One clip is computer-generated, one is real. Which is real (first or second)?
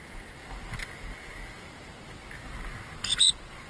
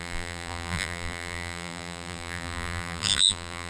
first